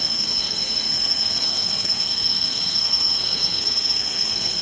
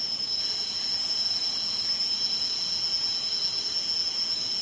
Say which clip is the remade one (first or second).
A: first